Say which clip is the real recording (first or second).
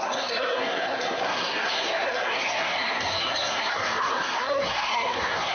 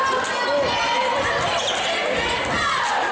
second